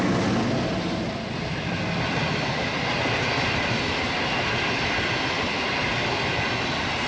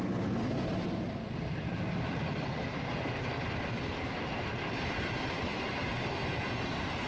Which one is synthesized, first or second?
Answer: second